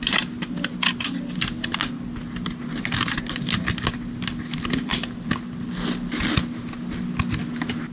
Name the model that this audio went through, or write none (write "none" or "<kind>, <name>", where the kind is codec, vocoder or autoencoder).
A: none